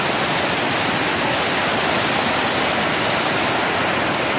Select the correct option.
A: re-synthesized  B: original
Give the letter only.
B